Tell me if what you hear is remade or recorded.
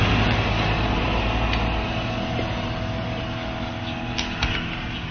recorded